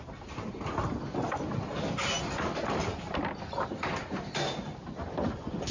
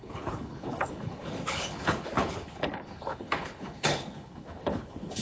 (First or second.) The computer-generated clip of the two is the second